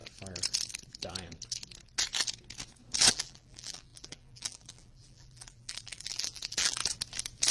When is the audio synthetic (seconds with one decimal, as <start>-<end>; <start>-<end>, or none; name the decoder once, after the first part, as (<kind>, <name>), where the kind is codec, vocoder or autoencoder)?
3.1-6.8 (vocoder, BigVGAN v2)